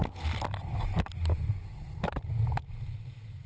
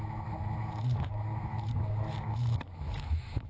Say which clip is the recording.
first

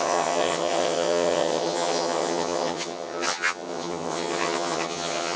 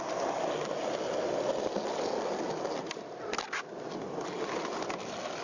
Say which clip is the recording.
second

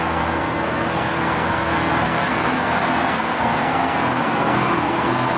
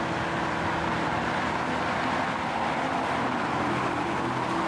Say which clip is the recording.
second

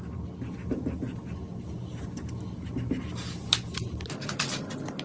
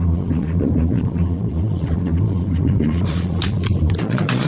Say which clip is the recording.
first